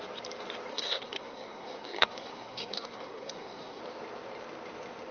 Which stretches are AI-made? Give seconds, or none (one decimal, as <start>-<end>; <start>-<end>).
0.7-3.8